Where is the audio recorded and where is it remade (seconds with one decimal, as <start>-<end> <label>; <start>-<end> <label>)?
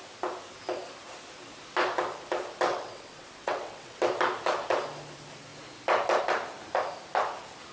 0.0-2.7 recorded; 2.7-4.0 remade; 4.0-7.7 recorded